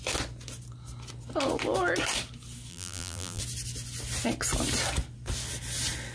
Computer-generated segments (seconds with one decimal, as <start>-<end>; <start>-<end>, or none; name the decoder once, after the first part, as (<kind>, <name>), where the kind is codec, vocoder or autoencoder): 2.7-3.4 (vocoder, BigVGAN v2)